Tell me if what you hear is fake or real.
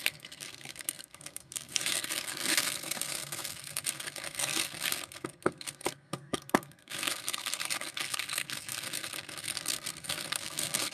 fake